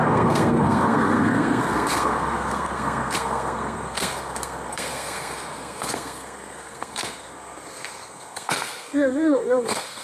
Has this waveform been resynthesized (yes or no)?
yes